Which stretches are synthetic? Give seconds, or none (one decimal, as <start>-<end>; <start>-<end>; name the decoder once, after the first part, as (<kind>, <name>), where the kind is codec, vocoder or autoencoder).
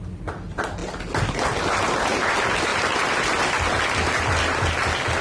none